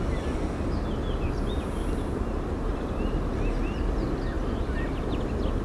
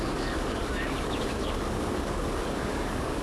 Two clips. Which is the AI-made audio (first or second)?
second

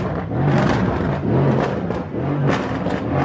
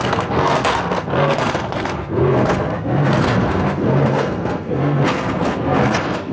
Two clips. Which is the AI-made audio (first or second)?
second